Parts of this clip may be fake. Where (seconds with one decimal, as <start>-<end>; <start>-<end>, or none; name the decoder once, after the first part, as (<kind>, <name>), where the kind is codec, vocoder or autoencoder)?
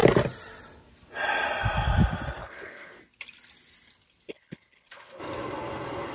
2.4-3.0 (codec, HILCodec); 4.3-5.2